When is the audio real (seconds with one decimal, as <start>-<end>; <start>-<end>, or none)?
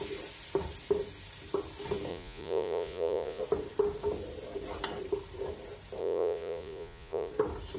0.0-2.1; 3.4-6.0; 7.3-7.8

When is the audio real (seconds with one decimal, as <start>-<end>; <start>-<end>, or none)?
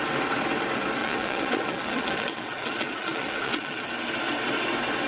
0.0-1.0; 3.9-5.1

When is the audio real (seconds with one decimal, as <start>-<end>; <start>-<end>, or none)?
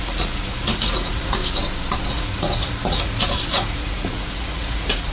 1.4-2.1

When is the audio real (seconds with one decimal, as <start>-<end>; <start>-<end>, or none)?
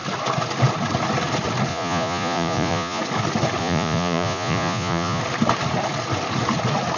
0.0-1.7; 3.0-3.6; 5.2-7.0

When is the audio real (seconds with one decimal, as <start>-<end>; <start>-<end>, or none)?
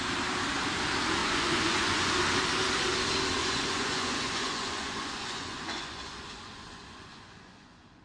0.0-1.2; 2.1-3.4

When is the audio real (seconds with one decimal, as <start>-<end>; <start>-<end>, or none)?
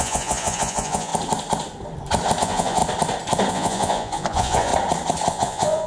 1.1-2.4; 2.8-3.5; 4.7-5.3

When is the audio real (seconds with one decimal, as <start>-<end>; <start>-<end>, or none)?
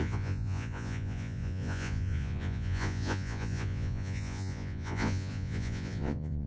none